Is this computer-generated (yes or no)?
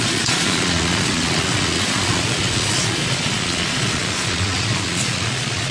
yes